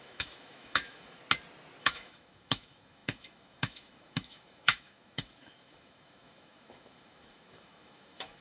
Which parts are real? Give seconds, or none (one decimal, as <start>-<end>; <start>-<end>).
1.2-1.8